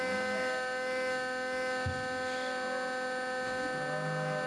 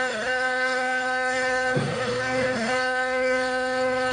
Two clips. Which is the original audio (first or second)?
first